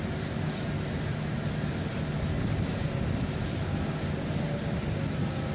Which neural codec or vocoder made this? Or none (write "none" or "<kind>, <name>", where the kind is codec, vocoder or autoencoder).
none